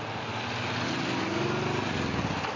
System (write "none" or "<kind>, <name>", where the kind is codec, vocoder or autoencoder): none